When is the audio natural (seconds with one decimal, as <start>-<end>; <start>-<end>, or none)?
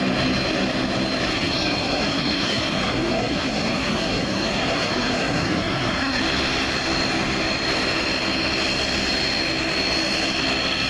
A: 0.0-1.3; 6.2-10.9